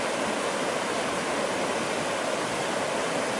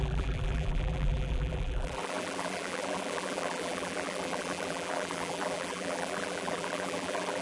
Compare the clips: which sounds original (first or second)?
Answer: first